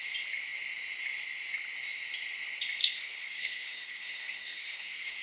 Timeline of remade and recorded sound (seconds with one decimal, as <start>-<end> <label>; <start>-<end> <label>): 0.0-2.8 recorded; 2.8-5.2 remade